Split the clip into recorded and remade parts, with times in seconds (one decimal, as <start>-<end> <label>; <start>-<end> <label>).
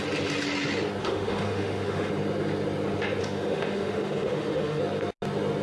0.0-1.0 recorded; 1.0-2.1 remade; 2.1-3.2 recorded; 3.2-4.8 remade; 4.8-5.6 recorded